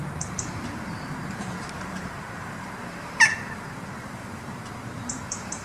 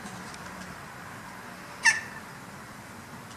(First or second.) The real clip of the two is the second